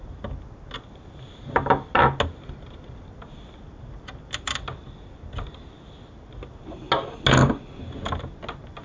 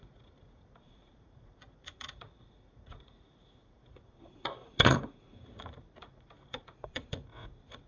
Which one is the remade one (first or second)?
second